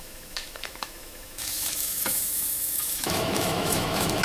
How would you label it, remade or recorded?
remade